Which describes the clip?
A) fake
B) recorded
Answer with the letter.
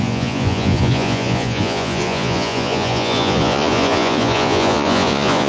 A